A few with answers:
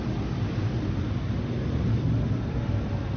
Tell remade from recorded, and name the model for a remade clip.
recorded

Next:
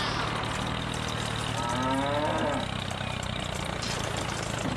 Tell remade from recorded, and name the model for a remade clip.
recorded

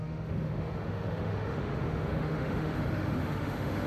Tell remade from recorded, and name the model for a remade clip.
remade, autoencoder, DAC-VAE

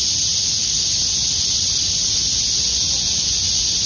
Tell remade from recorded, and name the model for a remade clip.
recorded